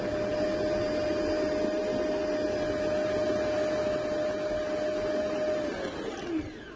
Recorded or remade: recorded